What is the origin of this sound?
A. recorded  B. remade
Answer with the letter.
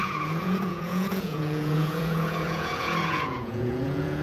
B